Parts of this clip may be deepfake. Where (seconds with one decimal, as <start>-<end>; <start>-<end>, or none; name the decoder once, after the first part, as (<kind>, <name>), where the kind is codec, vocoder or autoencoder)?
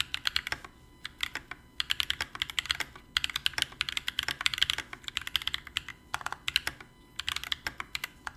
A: none